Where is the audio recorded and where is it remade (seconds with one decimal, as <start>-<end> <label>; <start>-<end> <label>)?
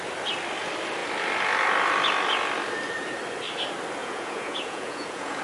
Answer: 0.0-4.0 recorded; 4.0-5.4 remade